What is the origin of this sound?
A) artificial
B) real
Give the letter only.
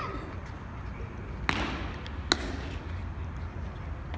B